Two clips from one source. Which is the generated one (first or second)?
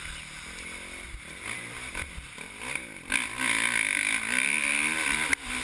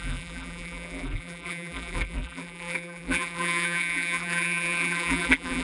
second